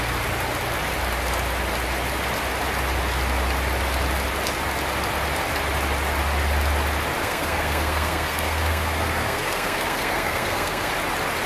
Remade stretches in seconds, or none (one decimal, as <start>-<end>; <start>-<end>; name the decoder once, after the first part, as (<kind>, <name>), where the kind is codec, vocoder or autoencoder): 7.2-10.9 (codec, SNAC)